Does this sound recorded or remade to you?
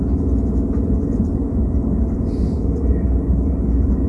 recorded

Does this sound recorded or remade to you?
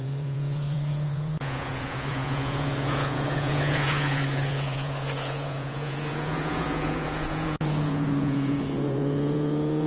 remade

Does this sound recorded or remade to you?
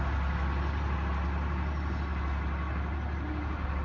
recorded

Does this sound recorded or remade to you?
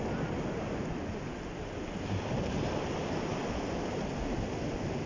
recorded